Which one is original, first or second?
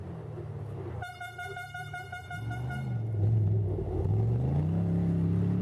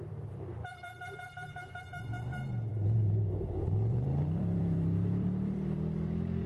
first